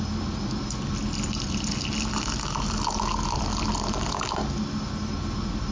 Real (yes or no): yes